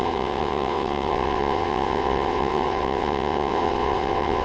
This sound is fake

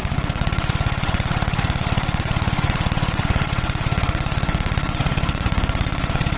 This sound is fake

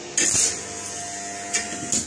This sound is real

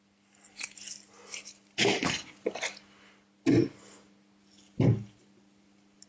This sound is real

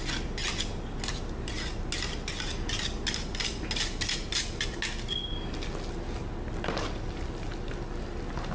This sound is real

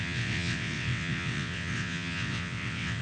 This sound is fake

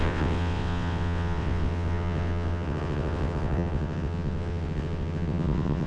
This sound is fake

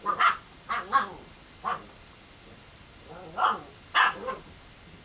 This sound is real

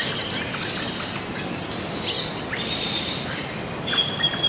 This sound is real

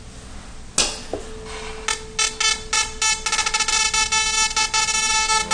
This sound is real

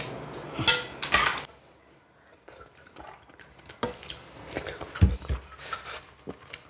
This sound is real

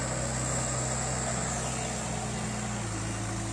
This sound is real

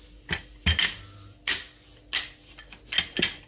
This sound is real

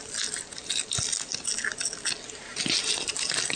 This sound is real